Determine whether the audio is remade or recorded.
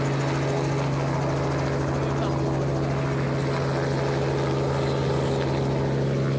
recorded